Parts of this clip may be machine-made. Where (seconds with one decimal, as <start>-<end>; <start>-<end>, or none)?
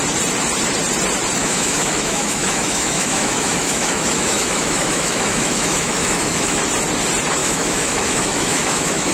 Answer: 1.4-6.6; 7.4-9.1